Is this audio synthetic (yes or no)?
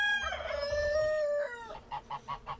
no